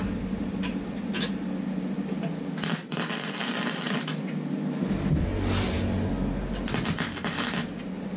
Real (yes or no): yes